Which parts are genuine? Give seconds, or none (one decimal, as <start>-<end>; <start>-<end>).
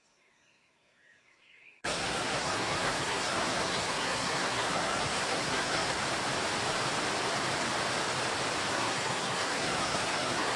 6.0-8.7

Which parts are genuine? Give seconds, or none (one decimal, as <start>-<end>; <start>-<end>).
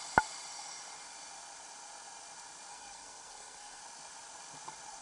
0.0-2.7; 3.8-5.0